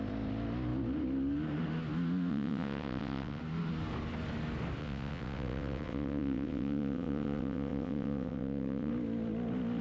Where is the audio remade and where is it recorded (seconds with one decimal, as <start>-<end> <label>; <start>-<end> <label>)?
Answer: 0.0-2.3 recorded; 2.3-3.4 remade; 3.4-4.8 recorded; 4.8-8.9 remade; 8.9-9.8 recorded